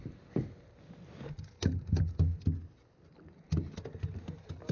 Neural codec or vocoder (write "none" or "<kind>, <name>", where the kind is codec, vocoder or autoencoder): none